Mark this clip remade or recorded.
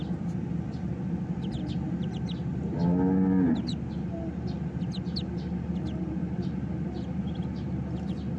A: recorded